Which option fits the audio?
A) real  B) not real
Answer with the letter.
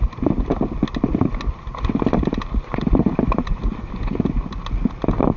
A